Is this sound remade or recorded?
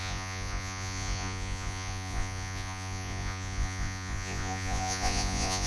remade